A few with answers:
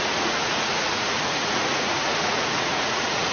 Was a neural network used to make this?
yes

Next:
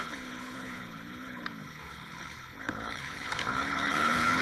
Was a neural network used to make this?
yes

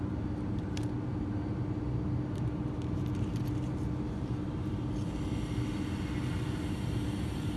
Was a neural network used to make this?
no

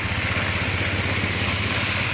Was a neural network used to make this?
no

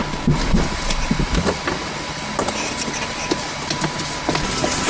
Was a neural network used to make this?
no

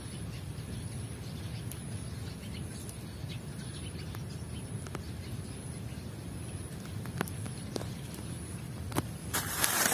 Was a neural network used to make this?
yes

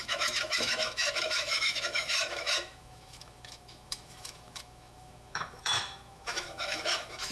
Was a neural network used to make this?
yes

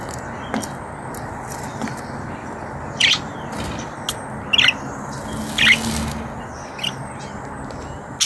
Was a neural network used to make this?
no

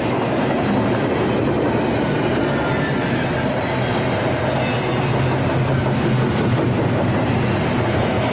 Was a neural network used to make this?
no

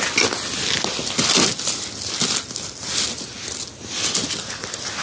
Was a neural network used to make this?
no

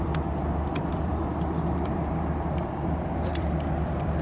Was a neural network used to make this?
yes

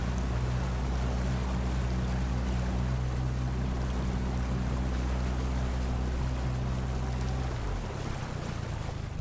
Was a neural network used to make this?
no